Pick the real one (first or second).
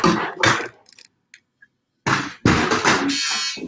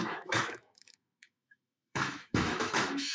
first